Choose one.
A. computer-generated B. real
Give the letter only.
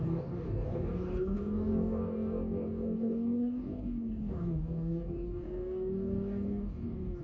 A